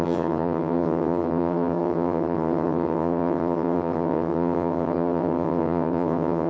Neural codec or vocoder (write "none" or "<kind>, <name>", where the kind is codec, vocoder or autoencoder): vocoder, HiFi-GAN